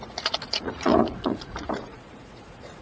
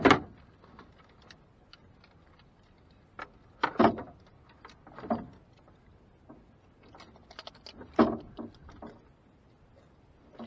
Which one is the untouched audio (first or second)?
second